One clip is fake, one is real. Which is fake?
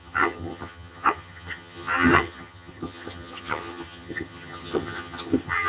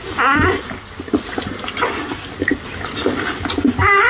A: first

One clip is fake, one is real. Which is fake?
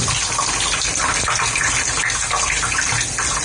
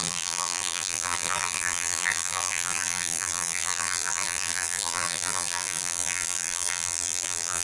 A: second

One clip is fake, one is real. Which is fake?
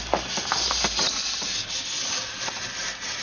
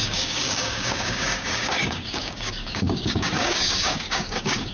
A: second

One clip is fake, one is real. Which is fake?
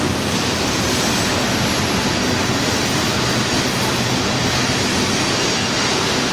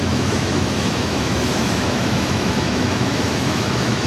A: second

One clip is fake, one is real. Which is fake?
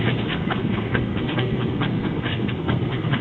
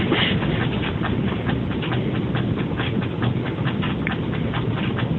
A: first